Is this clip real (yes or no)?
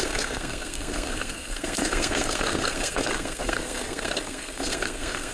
no